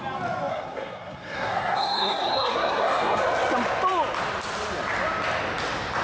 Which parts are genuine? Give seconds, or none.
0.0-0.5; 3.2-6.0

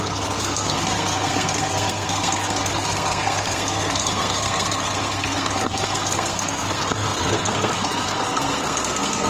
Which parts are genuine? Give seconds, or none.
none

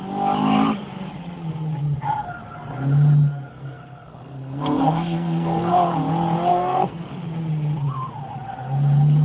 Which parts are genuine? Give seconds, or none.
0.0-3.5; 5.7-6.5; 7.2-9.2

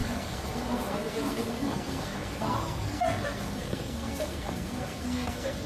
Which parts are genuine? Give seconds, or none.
none